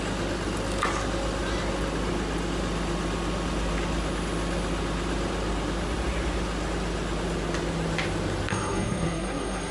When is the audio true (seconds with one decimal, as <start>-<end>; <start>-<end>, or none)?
0.0-8.5

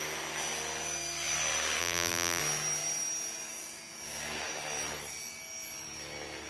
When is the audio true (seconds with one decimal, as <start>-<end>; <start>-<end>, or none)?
0.0-1.8; 2.4-6.5

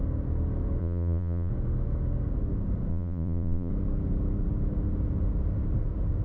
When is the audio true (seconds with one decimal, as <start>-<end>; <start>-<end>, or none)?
0.0-0.8; 1.5-2.9; 3.7-6.2

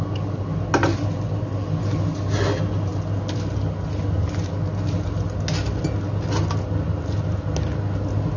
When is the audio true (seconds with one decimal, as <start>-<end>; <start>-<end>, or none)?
0.0-8.4

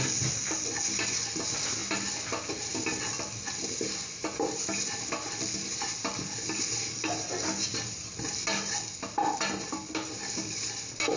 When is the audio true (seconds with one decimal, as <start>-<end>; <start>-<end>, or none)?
0.0-11.2

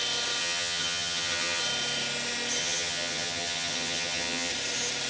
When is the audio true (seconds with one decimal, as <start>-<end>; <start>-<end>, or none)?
0.0-0.4; 1.6-2.6; 4.5-5.1

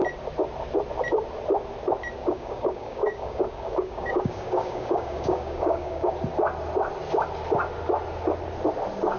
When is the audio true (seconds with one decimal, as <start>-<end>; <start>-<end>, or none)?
0.0-2.2; 6.1-9.2